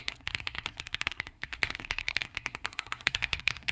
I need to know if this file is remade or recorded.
remade